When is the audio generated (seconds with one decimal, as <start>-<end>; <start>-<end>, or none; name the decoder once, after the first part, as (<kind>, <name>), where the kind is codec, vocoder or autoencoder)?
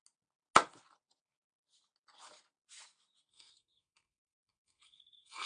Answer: 3.3-5.5 (codec, SNAC)